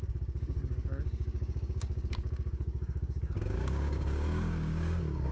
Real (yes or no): no